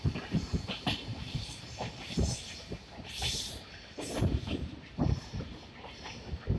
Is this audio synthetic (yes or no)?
yes